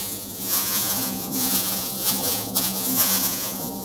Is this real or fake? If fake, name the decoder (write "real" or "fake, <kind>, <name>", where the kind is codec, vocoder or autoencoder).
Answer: fake, vocoder, Vocos